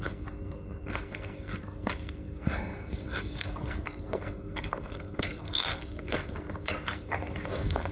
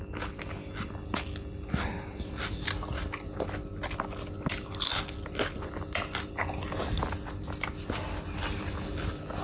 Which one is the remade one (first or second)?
first